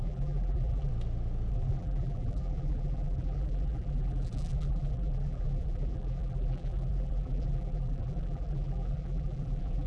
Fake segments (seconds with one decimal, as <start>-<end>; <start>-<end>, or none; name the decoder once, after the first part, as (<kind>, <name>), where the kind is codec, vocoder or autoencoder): 0.0-0.9 (vocoder, BigVGAN v2); 1.5-9.9